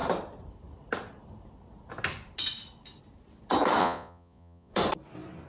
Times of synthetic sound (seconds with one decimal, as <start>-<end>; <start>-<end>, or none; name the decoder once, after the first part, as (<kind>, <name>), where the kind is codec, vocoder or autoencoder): 3.8-4.7 (vocoder, Vocos)